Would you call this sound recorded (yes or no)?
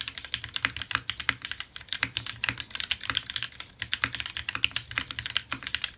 yes